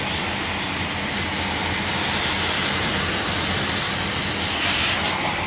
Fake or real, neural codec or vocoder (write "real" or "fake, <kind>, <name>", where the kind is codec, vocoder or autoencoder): real